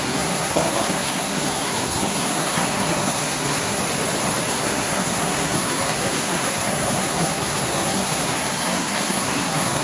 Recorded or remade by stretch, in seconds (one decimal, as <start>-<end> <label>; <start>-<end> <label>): 0.0-3.8 remade; 3.8-4.5 recorded; 4.5-9.8 remade